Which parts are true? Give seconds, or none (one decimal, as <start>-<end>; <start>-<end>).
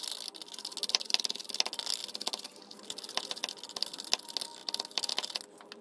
0.0-5.8